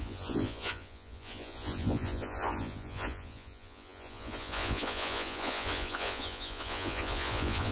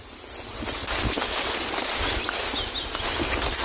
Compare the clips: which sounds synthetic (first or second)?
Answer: first